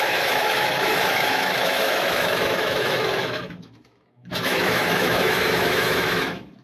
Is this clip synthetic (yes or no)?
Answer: yes